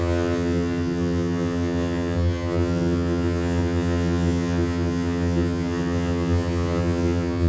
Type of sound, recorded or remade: remade